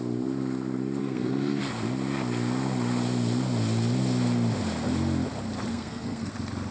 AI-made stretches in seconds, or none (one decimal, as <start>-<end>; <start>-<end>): 1.0-1.6; 5.7-6.3